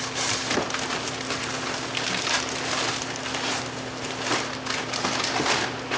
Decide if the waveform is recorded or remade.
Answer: recorded